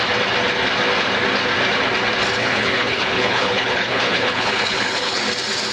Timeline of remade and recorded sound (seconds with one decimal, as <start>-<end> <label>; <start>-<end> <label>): 0.0-2.4 recorded; 2.4-5.2 remade; 5.2-5.7 recorded